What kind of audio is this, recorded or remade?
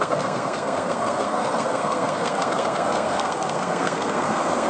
remade